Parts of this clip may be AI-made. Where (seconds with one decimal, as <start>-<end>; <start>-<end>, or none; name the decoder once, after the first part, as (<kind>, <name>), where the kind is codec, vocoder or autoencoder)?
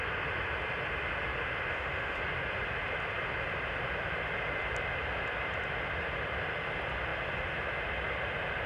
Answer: 1.7-2.2 (autoencoder, DAC-VAE)